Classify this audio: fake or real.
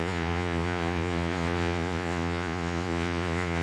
fake